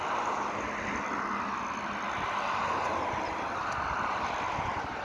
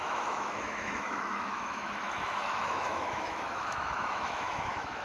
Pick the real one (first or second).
first